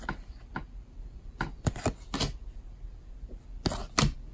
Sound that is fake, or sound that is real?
real